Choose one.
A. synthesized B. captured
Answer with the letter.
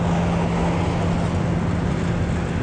B